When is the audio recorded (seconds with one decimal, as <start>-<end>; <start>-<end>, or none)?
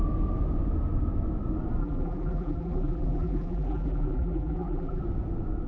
0.0-1.8; 5.0-5.7